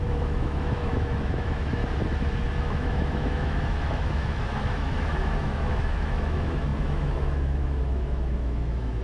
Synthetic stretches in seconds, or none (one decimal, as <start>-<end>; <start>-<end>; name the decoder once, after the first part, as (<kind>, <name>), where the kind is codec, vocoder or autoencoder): 0.0-1.8 (autoencoder, DAC-VAE); 2.6-9.0